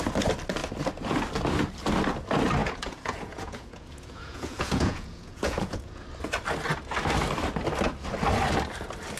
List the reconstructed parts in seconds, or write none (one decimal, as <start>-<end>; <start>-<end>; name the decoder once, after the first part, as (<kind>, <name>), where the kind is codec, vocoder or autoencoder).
2.6-6.0 (vocoder, Vocos)